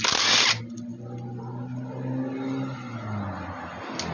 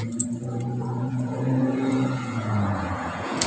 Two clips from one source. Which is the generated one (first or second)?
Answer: second